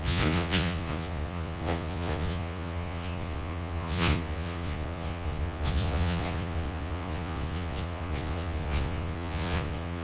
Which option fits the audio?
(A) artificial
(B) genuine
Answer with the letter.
A